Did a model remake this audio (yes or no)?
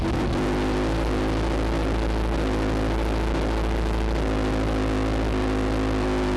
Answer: no